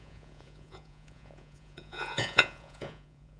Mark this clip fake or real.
fake